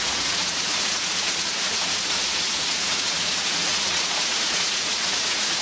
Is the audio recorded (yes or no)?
no